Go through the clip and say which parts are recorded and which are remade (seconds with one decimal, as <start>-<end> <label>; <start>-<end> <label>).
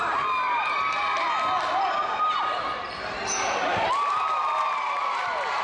0.0-5.6 recorded